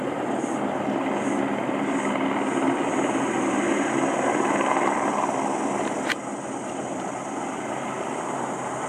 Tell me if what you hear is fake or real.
real